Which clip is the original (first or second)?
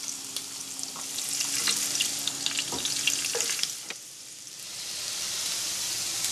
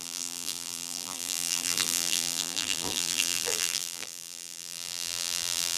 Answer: first